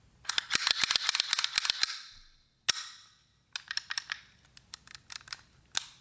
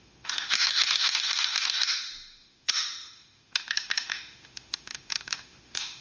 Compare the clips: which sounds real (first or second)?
first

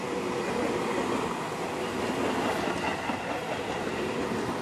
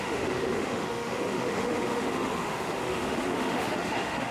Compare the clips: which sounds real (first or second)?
first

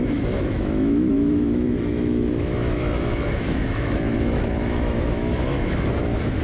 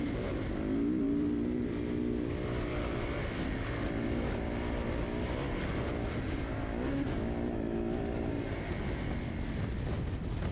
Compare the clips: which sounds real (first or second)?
second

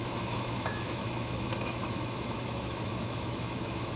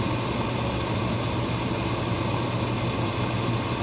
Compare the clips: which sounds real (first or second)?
second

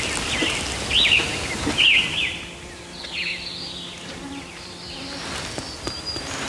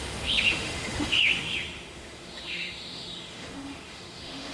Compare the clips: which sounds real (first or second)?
first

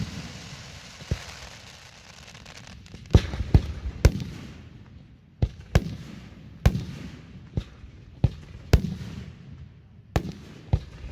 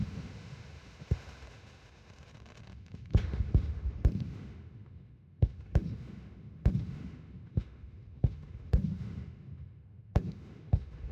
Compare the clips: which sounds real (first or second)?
first